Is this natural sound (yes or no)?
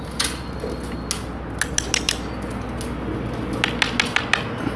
yes